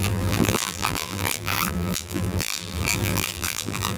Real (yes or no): no